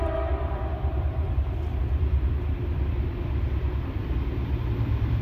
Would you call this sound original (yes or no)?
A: no